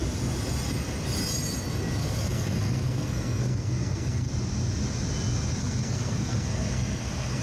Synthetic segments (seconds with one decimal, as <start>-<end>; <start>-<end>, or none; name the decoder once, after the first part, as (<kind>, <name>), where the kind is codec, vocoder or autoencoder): 2.0-4.3 (codec, SNAC); 5.6-7.4